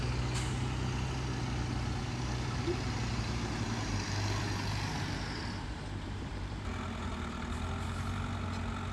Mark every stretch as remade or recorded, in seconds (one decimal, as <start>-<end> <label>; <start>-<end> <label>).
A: 0.0-2.0 recorded; 2.0-7.1 remade; 7.1-8.9 recorded